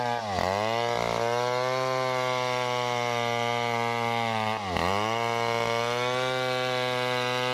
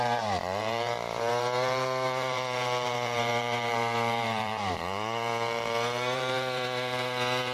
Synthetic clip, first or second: second